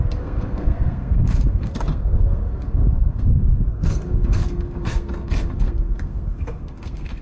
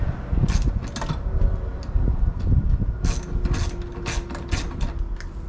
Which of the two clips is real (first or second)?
second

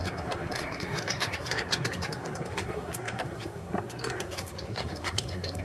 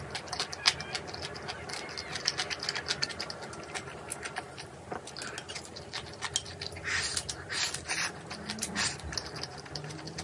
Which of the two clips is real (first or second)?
second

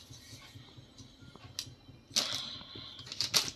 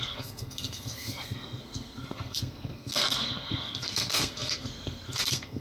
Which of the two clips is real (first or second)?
first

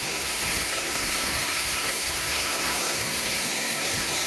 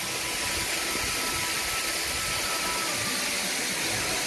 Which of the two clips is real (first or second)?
second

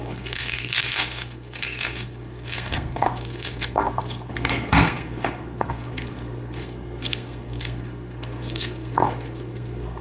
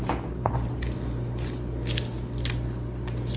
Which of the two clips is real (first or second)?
second